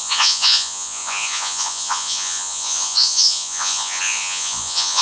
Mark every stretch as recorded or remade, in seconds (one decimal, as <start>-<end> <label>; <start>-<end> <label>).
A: 0.0-5.0 remade